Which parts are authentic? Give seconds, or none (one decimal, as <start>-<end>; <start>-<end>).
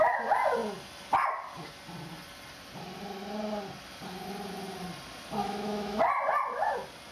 0.0-5.4; 6.0-7.1